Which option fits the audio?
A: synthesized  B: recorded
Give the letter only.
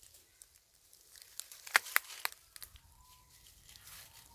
B